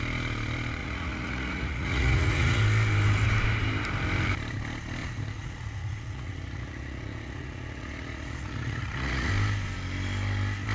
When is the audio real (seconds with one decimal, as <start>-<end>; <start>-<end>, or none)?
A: 0.0-0.8; 2.6-5.0; 9.3-10.7